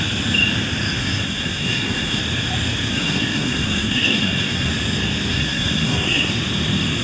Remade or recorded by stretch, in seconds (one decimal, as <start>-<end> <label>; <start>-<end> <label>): 0.0-1.0 recorded; 1.0-2.2 remade; 2.2-2.9 recorded; 2.9-4.7 remade; 4.7-5.3 recorded; 5.3-6.3 remade; 6.3-7.0 recorded